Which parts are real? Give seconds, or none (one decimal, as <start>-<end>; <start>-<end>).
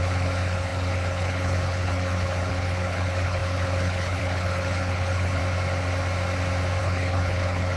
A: 5.4-6.8